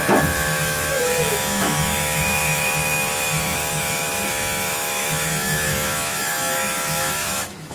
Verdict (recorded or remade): remade